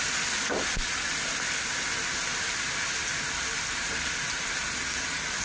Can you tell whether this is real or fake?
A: real